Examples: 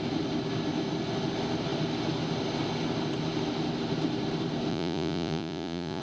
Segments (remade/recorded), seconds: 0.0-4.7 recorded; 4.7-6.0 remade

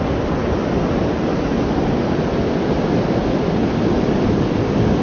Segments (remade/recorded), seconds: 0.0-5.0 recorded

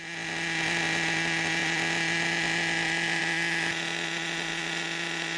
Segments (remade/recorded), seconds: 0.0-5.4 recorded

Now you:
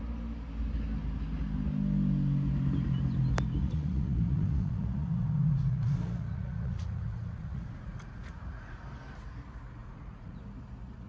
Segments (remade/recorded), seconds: 0.0-3.6 recorded; 3.6-8.8 remade; 8.8-9.8 recorded; 9.8-10.4 remade; 10.4-11.1 recorded

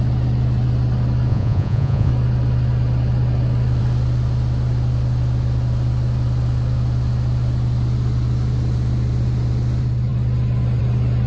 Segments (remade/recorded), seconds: 0.0-1.3 recorded; 1.3-2.1 remade; 2.1-11.3 recorded

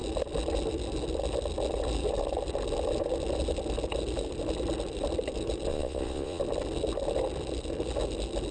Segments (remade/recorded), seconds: 0.0-5.7 recorded; 5.7-6.4 remade; 6.4-8.5 recorded

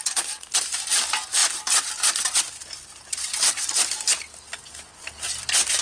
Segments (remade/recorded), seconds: 0.0-5.8 recorded